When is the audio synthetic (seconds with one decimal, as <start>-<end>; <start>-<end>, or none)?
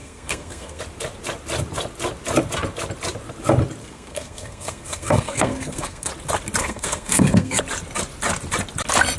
0.0-0.8; 3.8-6.1; 6.6-7.6